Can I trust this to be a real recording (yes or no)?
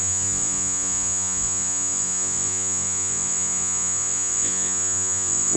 no